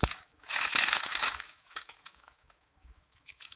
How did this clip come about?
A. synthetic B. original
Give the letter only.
A